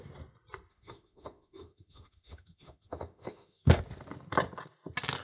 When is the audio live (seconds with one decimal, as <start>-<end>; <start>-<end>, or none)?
0.0-0.7; 3.8-5.2